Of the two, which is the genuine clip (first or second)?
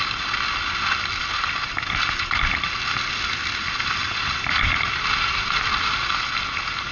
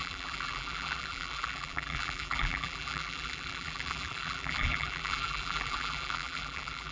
first